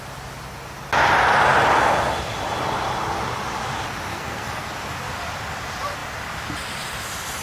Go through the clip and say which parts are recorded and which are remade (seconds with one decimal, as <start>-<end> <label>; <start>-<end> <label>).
0.0-4.1 recorded; 4.1-4.7 remade; 4.7-7.4 recorded

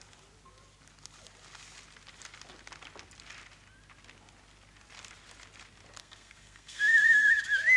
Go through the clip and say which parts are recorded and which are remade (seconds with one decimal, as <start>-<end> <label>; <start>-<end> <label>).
0.0-6.0 recorded; 6.0-7.3 remade; 7.3-7.8 recorded

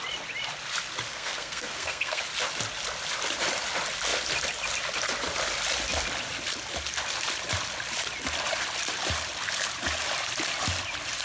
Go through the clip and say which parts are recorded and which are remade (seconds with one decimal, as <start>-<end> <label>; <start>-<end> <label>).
0.0-1.1 recorded; 1.1-2.2 remade; 2.2-11.2 recorded

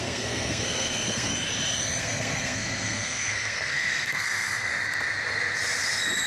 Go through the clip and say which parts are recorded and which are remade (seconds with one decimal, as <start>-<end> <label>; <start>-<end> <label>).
0.0-1.3 remade; 1.3-2.0 recorded; 2.0-4.7 remade; 4.7-6.3 recorded

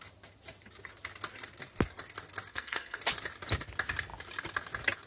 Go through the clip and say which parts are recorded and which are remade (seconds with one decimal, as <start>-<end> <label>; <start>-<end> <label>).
0.0-2.5 recorded; 2.5-3.0 remade; 3.0-5.1 recorded

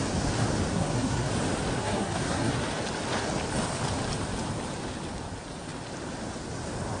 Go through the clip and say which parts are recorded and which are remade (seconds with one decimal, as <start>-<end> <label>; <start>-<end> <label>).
0.0-0.7 recorded; 0.7-1.3 remade; 1.3-1.8 recorded; 1.8-2.5 remade; 2.5-7.0 recorded

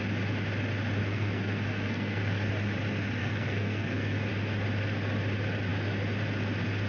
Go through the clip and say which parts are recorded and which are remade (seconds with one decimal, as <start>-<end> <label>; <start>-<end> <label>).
0.0-1.0 recorded; 1.0-2.5 remade; 2.5-3.2 recorded; 3.2-4.3 remade; 4.3-6.9 recorded